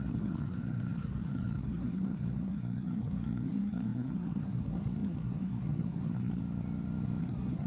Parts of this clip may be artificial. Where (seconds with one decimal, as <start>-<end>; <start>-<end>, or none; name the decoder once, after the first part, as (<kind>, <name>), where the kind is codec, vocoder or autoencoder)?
0.0-6.4 (codec, SNAC); 7.2-7.7